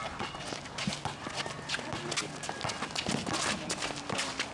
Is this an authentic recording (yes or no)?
yes